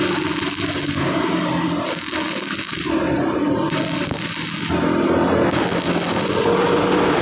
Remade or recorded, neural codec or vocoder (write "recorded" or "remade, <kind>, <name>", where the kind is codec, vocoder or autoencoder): recorded